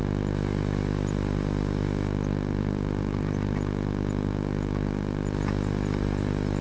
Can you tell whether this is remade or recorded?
recorded